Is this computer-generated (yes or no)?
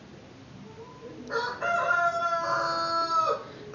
no